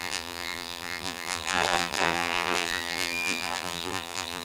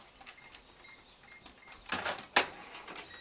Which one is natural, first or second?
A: second